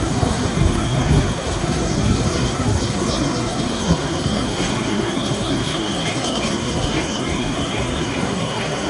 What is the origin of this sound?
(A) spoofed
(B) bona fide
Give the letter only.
A